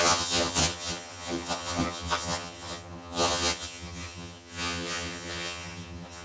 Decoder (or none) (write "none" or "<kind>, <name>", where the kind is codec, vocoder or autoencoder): vocoder, HiFi-GAN